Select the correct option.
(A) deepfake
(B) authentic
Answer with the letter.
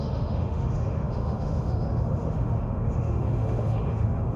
A